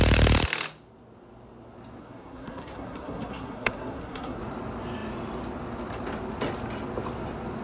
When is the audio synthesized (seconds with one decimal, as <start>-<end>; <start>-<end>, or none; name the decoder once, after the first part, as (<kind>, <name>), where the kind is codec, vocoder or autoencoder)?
2.0-4.4 (codec, SNAC)

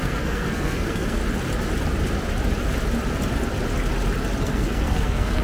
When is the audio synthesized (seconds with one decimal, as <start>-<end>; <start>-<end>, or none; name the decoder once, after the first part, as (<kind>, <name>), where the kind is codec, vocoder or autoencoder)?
0.0-1.2 (codec, SNAC); 4.4-5.4

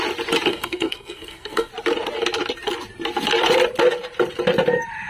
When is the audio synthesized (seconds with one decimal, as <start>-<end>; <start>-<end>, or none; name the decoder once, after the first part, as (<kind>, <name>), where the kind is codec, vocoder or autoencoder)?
0.5-1.7 (codec, SNAC)

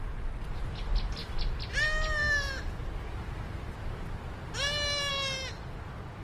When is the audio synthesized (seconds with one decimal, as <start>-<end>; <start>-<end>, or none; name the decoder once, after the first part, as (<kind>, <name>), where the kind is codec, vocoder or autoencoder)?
none